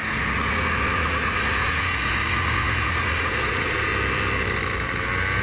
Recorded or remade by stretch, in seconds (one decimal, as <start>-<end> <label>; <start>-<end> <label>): 0.0-3.9 remade; 3.9-5.4 recorded